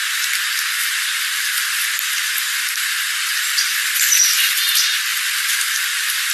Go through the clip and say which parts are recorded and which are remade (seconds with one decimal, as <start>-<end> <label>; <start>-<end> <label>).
0.0-0.8 recorded; 0.8-4.4 remade; 4.4-5.1 recorded; 5.1-6.3 remade